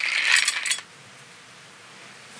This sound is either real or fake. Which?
real